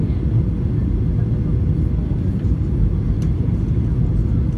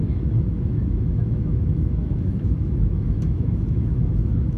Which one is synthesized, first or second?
second